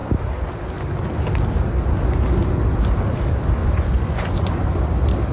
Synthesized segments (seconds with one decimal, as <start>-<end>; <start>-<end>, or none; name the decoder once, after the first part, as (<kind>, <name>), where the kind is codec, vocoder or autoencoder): 3.6-4.8 (vocoder, Vocos)